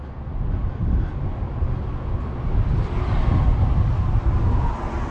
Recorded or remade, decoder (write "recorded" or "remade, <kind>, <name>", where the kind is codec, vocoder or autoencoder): recorded